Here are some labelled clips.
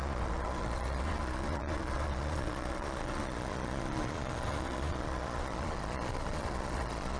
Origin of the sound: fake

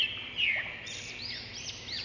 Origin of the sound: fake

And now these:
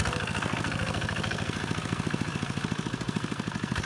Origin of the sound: fake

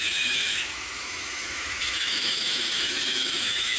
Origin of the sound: fake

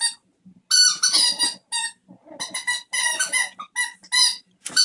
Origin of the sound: real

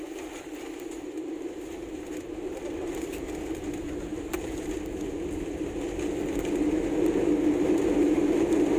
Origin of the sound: real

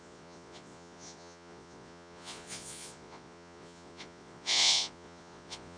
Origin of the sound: fake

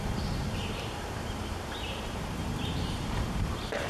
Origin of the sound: fake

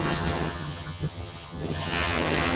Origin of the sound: fake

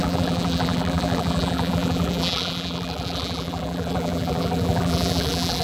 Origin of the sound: fake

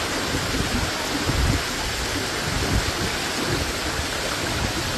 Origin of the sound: real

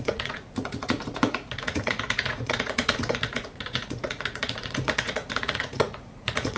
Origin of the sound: fake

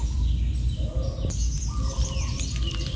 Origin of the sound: real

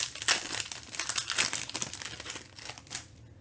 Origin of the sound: real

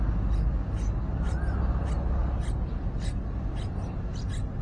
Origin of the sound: real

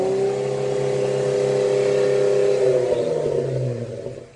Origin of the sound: real